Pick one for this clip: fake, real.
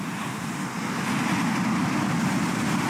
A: real